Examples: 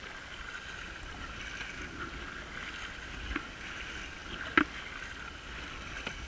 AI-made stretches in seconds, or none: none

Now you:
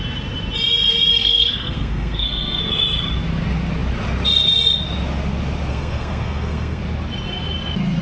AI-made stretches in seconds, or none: 1.1-2.6 (codec, SNAC); 5.7-6.8

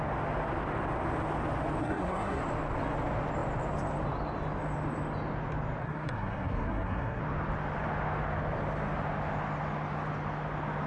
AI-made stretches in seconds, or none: 1.8-2.4 (codec, SNAC); 5.8-7.2

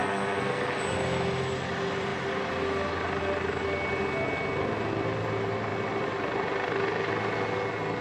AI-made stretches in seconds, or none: 0.0-0.6 (codec, SNAC)

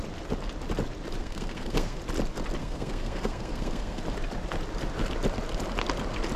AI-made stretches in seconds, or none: 1.2-2.0 (codec, SNAC); 2.6-4.0

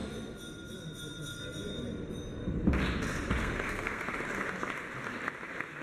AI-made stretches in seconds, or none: 3.4-4.0 (codec, SNAC)